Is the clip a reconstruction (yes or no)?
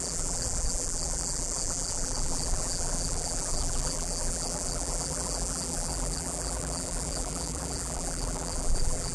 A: yes